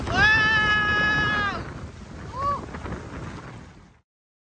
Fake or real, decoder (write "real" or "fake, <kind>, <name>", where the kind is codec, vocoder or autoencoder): real